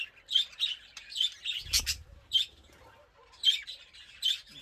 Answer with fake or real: real